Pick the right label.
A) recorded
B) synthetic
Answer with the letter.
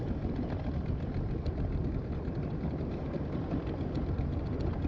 B